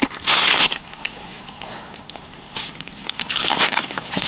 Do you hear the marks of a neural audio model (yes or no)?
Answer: yes